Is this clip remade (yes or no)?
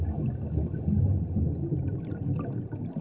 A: no